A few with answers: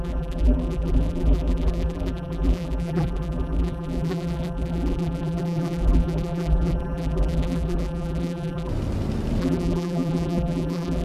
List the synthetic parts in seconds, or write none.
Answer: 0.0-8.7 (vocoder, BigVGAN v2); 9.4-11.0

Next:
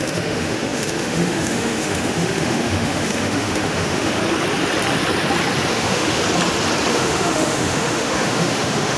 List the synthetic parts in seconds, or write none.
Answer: 0.0-4.2 (autoencoder, DAC-VAE); 5.7-6.2; 6.9-9.0

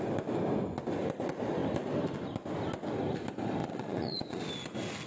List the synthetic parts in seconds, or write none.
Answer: 3.6-4.4 (vocoder, Vocos)

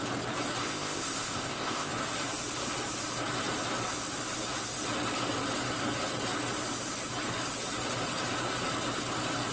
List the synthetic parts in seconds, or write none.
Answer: 0.6-1.9 (codec, ZipCodec)

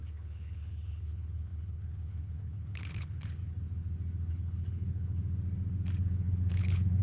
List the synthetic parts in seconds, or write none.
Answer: 0.0-3.4 (codec, HILCodec); 4.3-5.2; 6.0-7.0

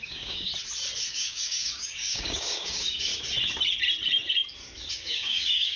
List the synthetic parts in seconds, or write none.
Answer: 0.0-0.5 (codec, DAC); 1.1-3.1; 4.9-5.8

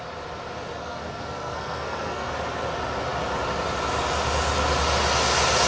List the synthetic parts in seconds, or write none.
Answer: 0.8-2.3 (codec, SNAC)

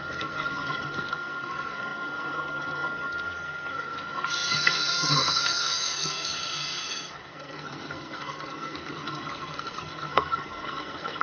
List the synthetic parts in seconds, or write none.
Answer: 0.0-11.2 (codec, SNAC)